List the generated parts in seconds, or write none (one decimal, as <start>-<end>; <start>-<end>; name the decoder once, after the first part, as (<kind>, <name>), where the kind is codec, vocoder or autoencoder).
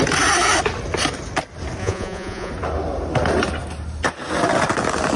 1.8-2.5 (vocoder, Vocos)